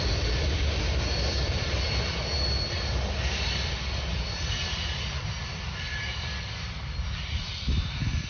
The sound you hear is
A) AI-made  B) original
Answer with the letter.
B